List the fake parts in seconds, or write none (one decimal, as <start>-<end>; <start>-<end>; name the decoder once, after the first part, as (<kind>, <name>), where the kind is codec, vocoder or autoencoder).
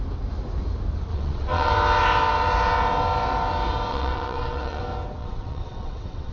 1.1-1.7 (vocoder, WaveNeXt); 3.9-4.8; 5.2-6.3